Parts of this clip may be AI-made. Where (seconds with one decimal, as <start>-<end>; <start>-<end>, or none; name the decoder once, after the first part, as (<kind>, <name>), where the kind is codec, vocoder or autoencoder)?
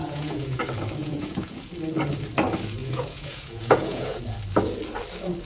0.0-0.6 (vocoder, Vocos); 1.0-1.7; 2.8-4.2